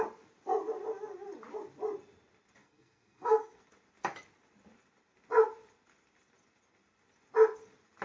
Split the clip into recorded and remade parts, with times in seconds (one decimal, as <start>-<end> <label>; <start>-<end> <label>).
0.0-2.6 recorded; 2.6-3.6 remade; 3.6-8.0 recorded